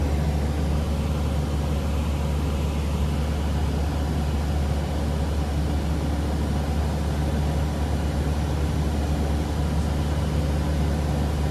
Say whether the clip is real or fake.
real